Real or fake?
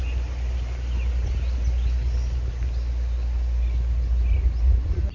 real